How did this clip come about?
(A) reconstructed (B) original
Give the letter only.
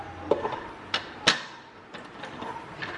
B